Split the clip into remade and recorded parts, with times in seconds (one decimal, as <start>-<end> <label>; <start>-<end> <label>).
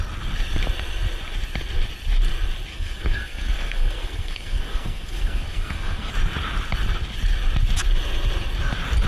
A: 0.0-2.7 recorded; 2.7-6.1 remade; 6.1-9.1 recorded